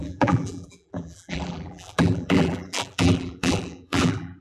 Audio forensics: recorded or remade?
remade